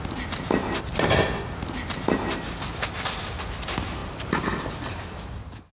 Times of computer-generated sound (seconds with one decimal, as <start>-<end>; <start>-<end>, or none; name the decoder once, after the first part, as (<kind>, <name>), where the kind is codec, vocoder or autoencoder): 4.0-4.9 (vocoder, BigVGAN v2)